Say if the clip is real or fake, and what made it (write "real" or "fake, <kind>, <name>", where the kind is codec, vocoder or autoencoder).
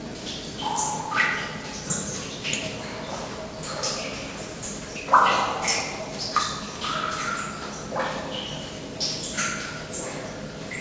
real